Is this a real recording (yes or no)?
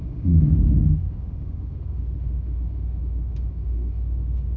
no